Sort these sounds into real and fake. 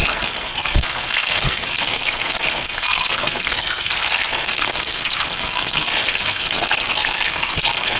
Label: fake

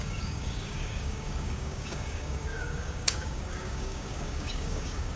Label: fake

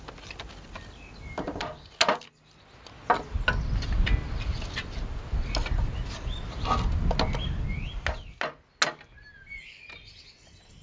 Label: real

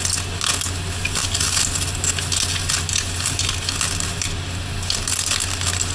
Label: real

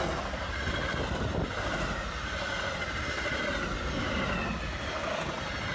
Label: real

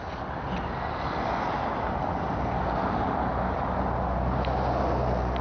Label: real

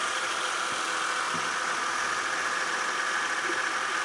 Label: real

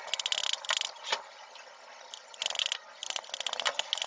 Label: real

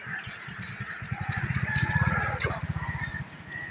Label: fake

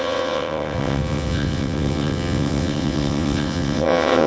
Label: fake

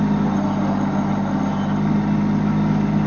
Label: real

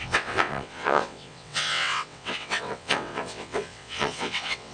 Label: fake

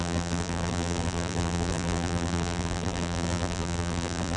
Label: fake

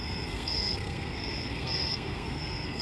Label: fake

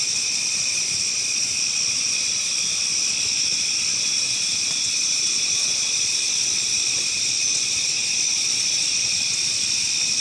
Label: fake